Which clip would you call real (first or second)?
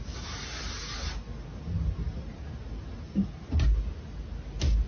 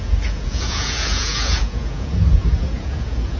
first